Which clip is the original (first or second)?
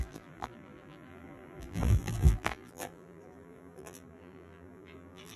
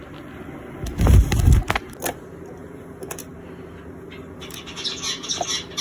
second